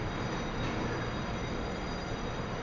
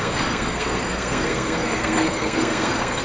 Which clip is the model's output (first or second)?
second